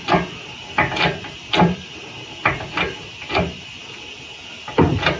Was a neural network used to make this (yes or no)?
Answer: no